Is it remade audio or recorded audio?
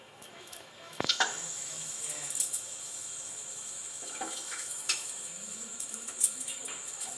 remade